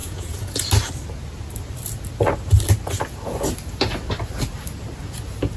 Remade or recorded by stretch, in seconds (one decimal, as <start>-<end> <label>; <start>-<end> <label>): 0.0-0.6 remade; 0.6-5.6 recorded